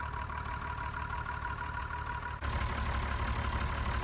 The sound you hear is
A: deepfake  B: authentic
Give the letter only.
B